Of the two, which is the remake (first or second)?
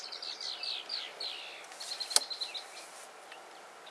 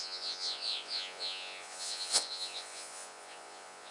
second